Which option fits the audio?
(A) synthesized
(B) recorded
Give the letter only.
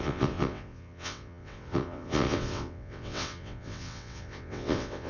A